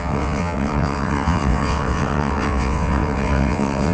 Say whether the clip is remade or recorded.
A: remade